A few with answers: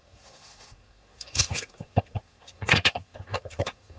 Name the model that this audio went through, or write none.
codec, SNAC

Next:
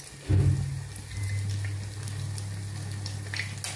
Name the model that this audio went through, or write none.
none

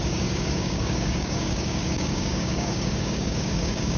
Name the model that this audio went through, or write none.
codec, DAC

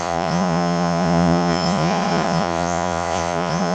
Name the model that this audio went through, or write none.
vocoder, Vocos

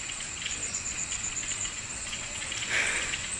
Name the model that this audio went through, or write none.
vocoder, Vocos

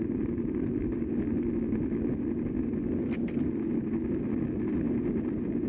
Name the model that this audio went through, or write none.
none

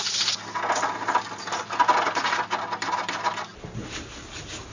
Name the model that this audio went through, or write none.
none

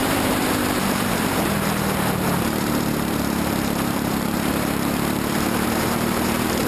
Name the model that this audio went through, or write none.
vocoder, BigVGAN v2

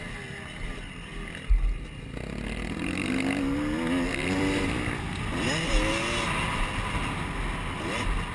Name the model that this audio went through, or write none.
none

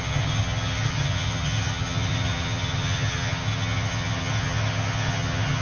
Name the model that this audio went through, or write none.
vocoder, HiFi-GAN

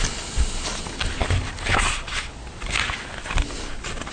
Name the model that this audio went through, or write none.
none